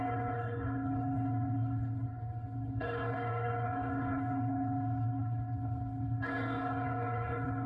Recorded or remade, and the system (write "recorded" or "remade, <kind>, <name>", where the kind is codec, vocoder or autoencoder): remade, codec, HILCodec